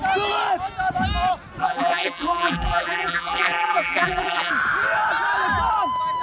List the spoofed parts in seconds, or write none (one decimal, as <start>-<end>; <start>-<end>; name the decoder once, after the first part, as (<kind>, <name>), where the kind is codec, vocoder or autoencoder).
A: 1.6-4.5 (vocoder, BigVGAN v2)